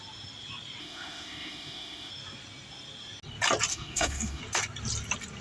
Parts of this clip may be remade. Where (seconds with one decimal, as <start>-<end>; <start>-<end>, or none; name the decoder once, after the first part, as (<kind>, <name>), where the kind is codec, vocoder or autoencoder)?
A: 0.8-2.1 (autoencoder, DAC-VAE); 3.7-4.4